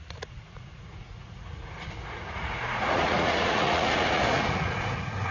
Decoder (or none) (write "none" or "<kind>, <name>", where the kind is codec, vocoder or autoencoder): vocoder, Vocos